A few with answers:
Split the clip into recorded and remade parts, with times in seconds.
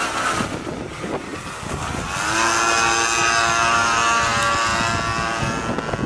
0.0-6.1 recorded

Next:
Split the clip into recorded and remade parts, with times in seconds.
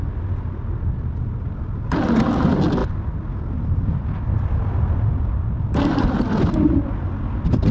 0.0-7.7 recorded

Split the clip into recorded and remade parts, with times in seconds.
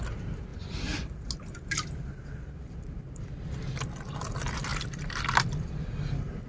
0.0-6.5 recorded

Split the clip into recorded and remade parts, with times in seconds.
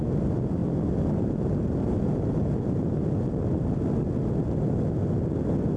0.0-5.8 recorded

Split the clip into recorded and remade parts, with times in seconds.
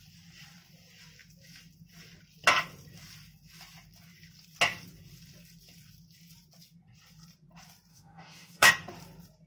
0.0-7.9 recorded; 7.9-8.7 remade; 8.7-9.5 recorded